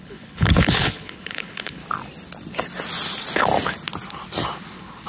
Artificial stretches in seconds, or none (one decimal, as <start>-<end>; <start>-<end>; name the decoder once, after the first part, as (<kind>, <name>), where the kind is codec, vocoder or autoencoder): 0.0-1.8 (codec, HILCodec)